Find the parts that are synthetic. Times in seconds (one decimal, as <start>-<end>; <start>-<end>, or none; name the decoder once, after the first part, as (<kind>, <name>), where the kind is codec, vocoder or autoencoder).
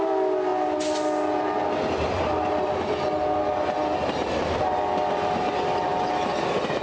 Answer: none